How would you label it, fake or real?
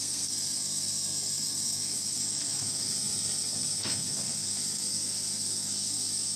fake